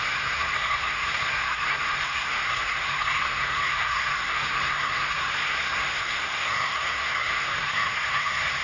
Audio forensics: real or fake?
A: fake